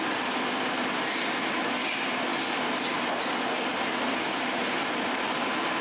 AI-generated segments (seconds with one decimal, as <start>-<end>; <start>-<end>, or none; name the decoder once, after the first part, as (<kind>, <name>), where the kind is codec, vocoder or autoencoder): none